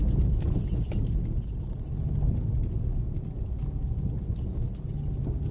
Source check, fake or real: real